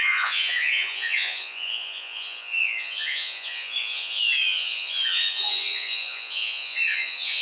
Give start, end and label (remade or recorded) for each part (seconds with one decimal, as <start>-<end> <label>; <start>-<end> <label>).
0.0-7.4 remade

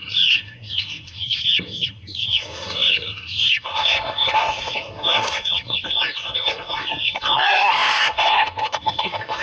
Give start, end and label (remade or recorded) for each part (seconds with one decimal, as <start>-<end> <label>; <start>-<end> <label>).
0.0-9.4 remade

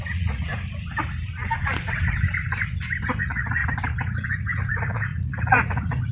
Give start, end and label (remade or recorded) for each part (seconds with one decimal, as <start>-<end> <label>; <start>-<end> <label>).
0.0-0.5 remade; 0.5-3.2 recorded; 3.2-3.6 remade; 3.6-4.3 recorded; 4.3-6.1 remade

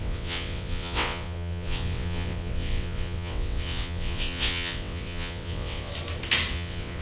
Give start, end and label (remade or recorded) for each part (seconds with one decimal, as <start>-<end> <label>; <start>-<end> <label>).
0.0-5.9 remade; 5.9-6.5 recorded; 6.5-7.0 remade

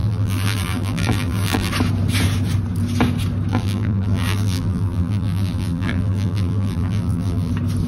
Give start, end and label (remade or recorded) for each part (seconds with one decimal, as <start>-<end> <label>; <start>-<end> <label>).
0.0-1.7 remade; 1.7-3.5 recorded; 3.5-7.5 remade; 7.5-7.9 recorded

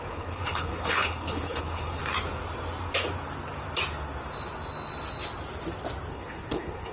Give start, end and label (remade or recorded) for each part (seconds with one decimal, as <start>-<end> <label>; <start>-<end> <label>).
0.0-2.0 remade; 2.0-6.1 recorded; 6.1-6.9 remade